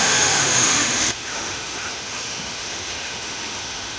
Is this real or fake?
fake